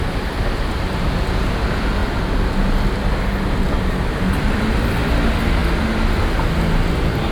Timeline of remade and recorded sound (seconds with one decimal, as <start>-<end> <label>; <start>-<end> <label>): 0.0-7.3 recorded